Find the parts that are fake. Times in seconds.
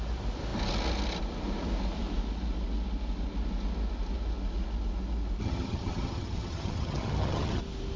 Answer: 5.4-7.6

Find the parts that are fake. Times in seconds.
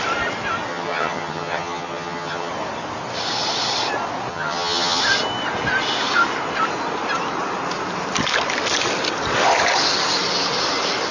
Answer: 0.7-2.5; 4.3-5.0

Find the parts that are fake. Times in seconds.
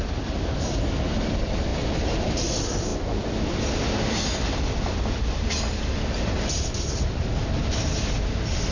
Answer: none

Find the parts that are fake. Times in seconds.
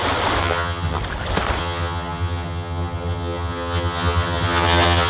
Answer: 0.4-1.0; 1.6-5.1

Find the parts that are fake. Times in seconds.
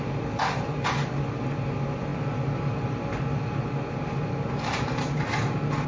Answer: none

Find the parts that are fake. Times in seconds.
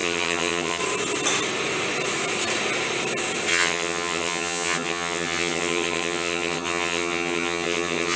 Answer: 0.0-0.8; 3.5-8.2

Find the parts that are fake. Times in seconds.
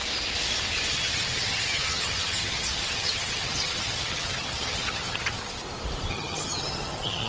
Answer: 0.9-5.4; 6.1-7.3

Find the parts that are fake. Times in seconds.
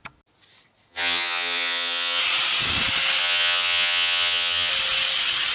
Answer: 0.9-2.2; 3.2-4.7